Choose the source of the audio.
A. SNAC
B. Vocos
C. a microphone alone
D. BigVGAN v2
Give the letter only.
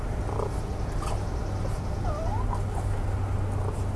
C